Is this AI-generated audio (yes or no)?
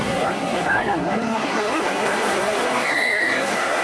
yes